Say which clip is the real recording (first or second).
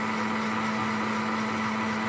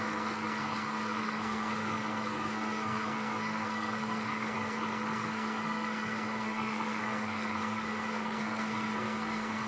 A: first